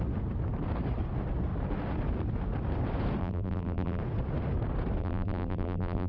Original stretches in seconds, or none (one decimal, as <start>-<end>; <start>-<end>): 0.0-3.2; 4.0-5.0